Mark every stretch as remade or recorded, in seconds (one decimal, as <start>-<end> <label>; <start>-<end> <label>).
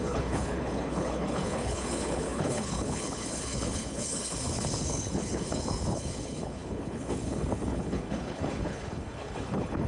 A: 0.0-9.9 remade